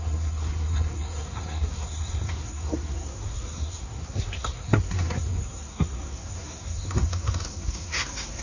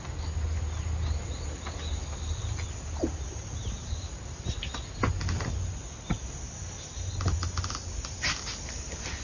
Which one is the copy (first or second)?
first